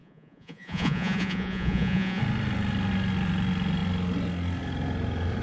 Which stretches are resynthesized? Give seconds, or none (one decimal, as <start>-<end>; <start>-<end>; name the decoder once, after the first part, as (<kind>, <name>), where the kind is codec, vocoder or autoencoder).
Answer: 0.0-2.2 (vocoder, Vocos)